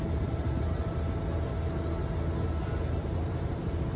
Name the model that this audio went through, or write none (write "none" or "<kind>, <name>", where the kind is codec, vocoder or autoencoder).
none